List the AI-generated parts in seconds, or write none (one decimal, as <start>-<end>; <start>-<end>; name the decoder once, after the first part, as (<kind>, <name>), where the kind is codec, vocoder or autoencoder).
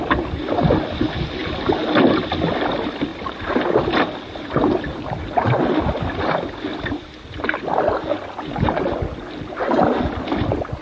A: none